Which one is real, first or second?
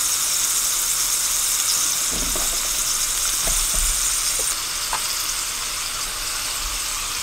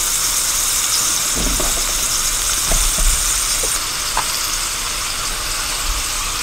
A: first